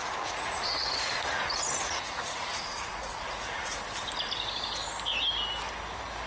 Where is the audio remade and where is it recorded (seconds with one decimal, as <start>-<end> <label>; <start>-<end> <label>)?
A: 0.0-3.8 remade; 3.8-6.3 recorded